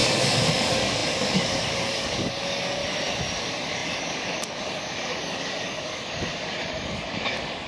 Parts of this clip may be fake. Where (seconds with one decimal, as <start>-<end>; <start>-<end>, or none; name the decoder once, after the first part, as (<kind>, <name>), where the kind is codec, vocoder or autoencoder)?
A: 0.0-2.8 (codec, DAC); 3.4-7.7